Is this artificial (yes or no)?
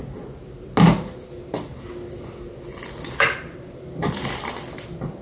no